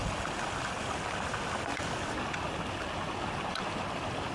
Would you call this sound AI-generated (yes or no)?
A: no